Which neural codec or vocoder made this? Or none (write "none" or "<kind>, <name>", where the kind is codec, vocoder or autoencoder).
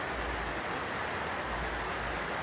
none